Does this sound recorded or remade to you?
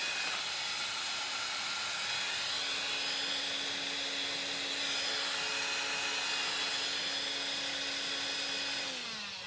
recorded